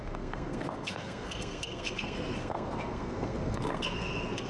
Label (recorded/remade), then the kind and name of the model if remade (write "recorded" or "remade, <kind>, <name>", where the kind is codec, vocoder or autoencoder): remade, codec, SNAC